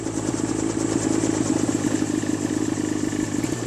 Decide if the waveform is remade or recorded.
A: recorded